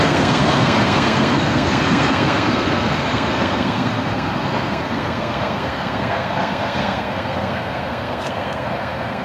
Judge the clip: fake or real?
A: fake